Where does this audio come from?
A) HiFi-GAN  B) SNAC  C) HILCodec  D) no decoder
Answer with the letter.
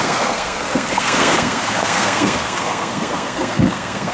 B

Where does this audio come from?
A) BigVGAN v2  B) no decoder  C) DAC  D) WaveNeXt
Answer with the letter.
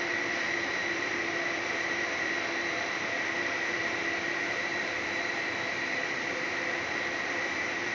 A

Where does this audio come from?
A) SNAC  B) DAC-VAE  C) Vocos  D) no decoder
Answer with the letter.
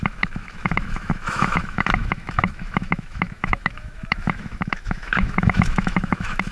B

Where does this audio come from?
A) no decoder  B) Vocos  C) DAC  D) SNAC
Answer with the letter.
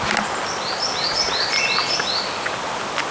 A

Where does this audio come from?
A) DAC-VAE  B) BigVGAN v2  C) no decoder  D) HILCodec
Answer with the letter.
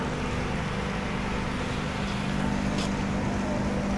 C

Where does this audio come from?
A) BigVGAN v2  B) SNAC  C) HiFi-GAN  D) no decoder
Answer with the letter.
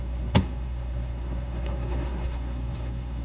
B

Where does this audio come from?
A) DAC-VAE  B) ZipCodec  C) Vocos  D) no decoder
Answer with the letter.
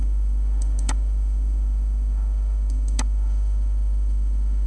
A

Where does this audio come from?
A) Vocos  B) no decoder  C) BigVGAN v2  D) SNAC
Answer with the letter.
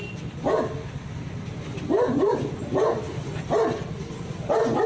B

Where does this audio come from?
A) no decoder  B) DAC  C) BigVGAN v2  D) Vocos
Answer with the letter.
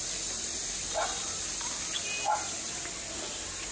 A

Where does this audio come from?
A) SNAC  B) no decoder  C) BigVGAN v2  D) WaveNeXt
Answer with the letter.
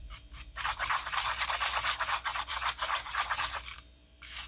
C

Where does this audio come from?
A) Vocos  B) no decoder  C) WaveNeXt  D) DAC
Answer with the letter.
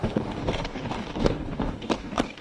D